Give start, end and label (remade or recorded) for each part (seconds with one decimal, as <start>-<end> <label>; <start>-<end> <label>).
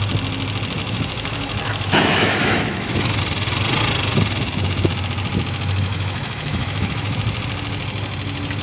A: 0.0-0.8 recorded; 0.8-3.2 remade; 3.2-5.9 recorded; 5.9-7.2 remade; 7.2-8.6 recorded